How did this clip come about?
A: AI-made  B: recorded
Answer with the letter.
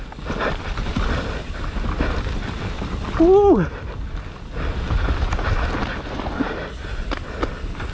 B